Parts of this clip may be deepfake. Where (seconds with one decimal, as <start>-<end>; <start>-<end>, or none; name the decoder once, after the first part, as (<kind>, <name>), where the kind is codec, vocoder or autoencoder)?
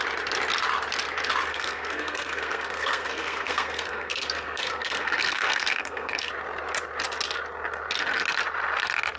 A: 1.5-6.3 (codec, SNAC)